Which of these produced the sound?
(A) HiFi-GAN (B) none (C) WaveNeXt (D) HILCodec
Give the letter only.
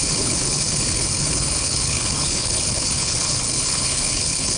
D